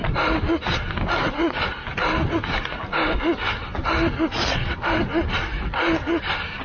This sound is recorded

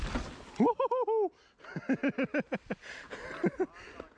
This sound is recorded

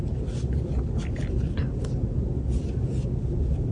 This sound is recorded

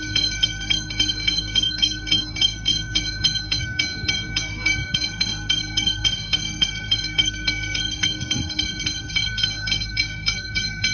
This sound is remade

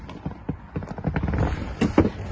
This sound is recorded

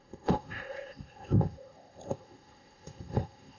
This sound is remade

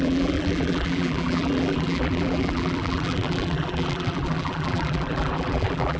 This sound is remade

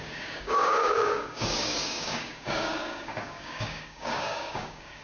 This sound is remade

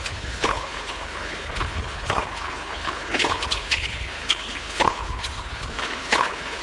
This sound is remade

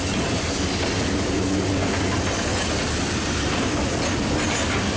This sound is recorded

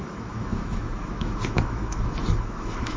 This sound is remade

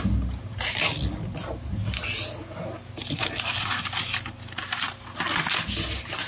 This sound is recorded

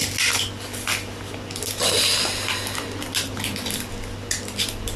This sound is recorded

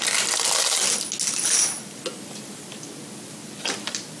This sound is recorded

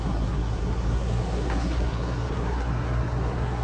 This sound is remade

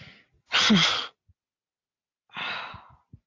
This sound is recorded